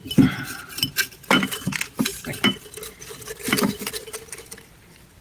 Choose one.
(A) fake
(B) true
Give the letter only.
B